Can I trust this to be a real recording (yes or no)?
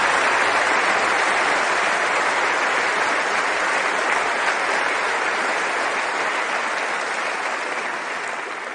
yes